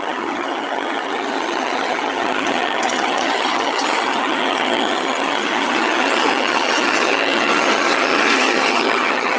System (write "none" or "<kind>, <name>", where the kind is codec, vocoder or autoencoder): vocoder, HiFi-GAN